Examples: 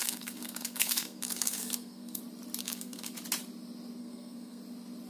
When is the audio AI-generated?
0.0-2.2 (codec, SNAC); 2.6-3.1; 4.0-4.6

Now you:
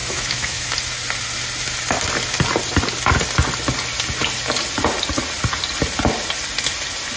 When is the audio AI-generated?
0.0-0.7 (autoencoder, DAC-VAE)